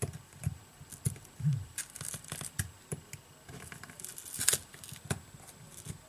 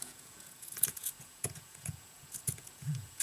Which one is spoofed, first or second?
second